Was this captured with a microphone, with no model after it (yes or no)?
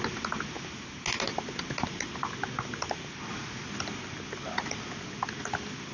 yes